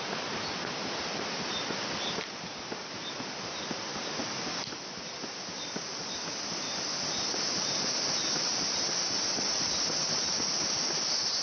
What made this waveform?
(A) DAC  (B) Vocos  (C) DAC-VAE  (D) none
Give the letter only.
D